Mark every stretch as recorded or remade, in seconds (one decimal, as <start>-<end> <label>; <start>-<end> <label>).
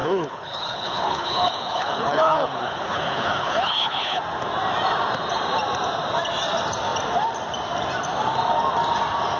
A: 0.0-4.2 remade; 4.2-9.4 recorded